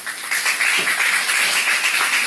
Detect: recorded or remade recorded